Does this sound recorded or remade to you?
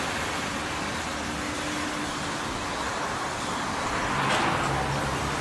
recorded